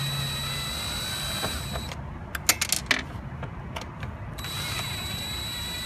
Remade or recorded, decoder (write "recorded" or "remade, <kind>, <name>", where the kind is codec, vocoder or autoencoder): recorded